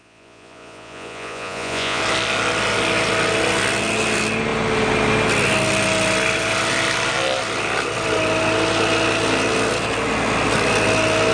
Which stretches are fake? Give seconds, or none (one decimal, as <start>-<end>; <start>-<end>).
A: 0.0-2.0